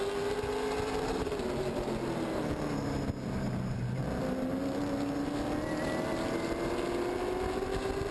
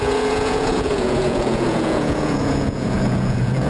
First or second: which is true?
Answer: first